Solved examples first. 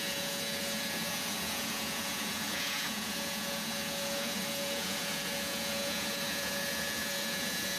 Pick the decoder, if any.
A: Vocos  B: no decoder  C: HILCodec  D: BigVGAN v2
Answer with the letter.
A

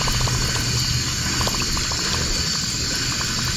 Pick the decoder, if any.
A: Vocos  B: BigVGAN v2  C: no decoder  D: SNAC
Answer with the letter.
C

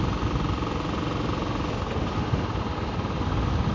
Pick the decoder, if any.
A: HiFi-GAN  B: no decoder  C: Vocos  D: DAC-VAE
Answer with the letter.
B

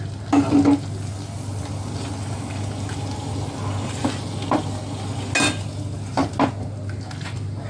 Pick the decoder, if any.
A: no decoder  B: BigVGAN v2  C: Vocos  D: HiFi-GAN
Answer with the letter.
A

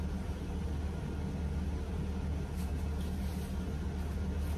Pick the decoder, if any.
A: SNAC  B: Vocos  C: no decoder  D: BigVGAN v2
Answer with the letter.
C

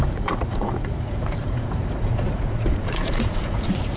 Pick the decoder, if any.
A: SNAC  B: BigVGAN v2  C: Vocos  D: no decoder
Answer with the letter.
C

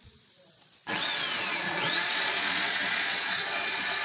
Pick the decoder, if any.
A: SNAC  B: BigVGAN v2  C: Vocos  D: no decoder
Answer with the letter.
C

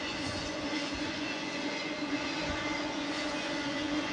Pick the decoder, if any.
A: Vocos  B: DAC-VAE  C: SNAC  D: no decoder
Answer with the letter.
A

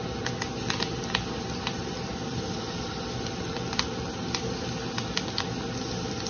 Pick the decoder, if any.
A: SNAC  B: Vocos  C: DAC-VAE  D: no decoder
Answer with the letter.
D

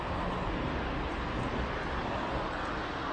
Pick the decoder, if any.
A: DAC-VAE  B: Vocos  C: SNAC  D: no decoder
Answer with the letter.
D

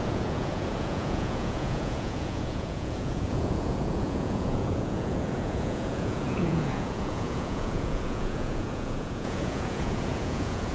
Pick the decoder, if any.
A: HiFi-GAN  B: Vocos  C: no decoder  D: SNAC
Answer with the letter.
B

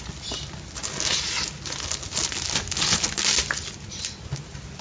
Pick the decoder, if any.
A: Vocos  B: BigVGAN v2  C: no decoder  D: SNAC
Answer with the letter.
C